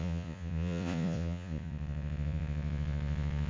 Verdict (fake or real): fake